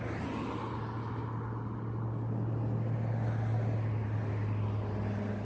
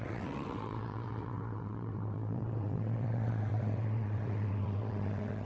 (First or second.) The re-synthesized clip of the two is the second